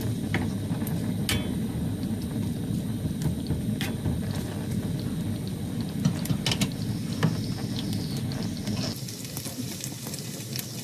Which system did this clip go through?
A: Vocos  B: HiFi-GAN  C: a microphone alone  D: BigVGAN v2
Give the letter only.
C